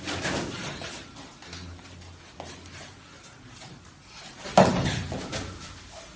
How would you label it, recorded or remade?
recorded